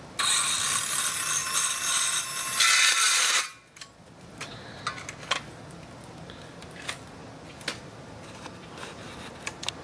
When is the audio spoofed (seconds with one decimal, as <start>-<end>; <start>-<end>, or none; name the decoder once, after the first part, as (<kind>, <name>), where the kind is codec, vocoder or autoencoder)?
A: none